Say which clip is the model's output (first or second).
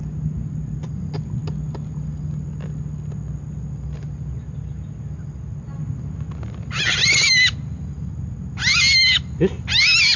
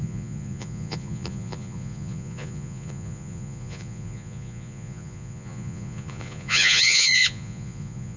second